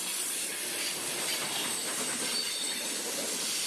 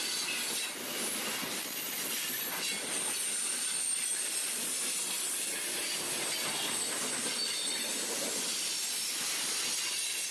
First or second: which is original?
second